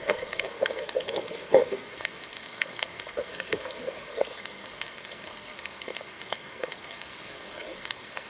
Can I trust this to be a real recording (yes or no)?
no